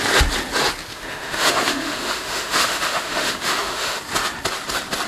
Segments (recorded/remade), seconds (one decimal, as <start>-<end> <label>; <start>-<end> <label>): 0.0-0.9 recorded; 0.9-4.0 remade; 4.0-5.1 recorded